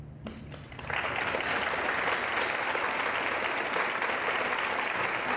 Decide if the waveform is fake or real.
real